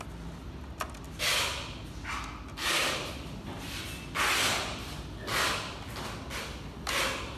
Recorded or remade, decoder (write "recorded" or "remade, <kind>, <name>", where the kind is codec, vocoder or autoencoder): recorded